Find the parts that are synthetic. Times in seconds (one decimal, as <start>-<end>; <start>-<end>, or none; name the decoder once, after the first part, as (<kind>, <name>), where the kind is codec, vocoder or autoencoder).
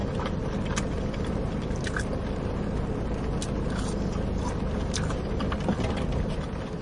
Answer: none